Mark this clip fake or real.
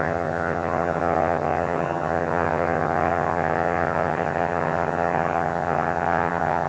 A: fake